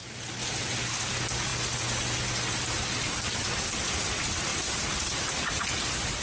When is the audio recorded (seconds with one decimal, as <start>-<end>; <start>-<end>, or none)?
0.0-6.2